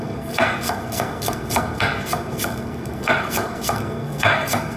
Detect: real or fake fake